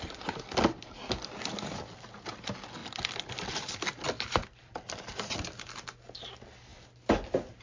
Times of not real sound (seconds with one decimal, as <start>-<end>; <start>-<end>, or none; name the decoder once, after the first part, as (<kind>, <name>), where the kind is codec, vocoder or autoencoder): 2.8-5.6 (vocoder, BigVGAN v2)